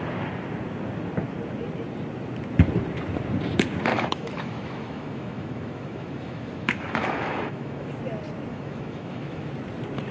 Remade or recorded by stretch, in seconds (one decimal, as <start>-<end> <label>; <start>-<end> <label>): 0.0-3.9 recorded; 3.9-7.9 remade; 7.9-8.5 recorded; 8.5-9.5 remade; 9.5-10.1 recorded